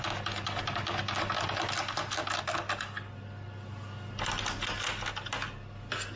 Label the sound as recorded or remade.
recorded